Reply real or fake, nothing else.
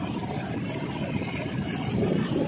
real